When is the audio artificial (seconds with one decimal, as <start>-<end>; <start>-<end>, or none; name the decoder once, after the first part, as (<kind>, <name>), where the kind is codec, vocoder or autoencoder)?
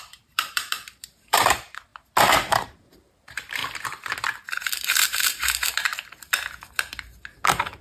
0.0-1.9 (vocoder, BigVGAN v2); 2.5-3.6; 4.6-5.9